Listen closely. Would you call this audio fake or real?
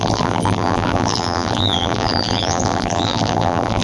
fake